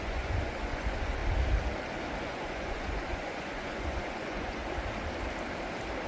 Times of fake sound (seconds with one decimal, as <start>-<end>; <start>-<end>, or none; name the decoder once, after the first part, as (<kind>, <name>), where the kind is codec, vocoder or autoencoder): 0.0-1.2 (vocoder, Vocos); 2.2-4.6